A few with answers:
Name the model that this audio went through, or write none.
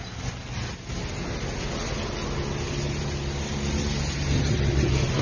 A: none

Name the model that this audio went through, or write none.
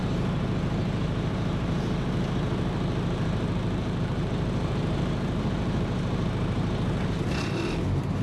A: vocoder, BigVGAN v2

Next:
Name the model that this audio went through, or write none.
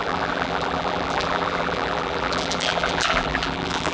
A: vocoder, BigVGAN v2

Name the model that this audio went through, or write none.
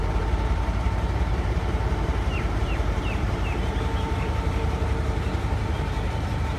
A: vocoder, BigVGAN v2